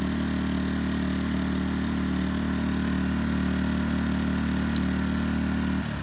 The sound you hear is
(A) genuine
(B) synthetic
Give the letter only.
A